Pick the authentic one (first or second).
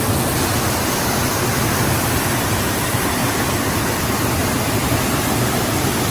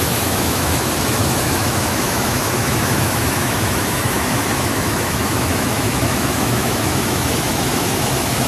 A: first